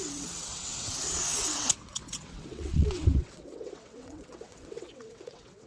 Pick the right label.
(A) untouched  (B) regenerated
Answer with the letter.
B